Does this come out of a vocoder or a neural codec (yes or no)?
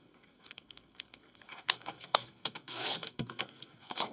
yes